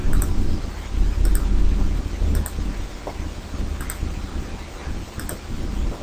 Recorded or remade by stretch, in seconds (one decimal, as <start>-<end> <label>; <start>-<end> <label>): 0.0-6.0 recorded